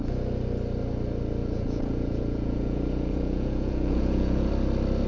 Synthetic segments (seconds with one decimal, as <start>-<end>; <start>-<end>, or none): 1.4-4.5